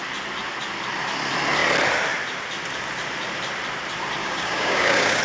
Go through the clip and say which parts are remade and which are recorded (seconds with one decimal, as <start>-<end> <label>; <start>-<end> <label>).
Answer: 0.0-4.2 recorded; 4.2-5.2 remade